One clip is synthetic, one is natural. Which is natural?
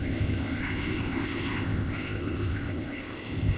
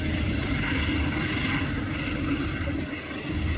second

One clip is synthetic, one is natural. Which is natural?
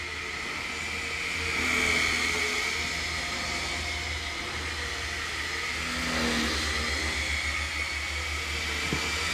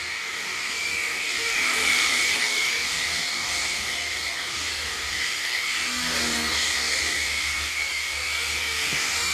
first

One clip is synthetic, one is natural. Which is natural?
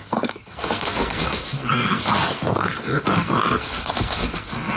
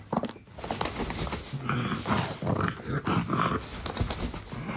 second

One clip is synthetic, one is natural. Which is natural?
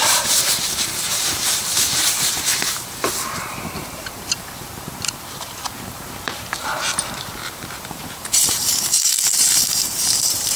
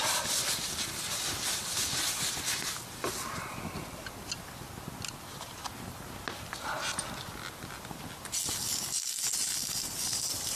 second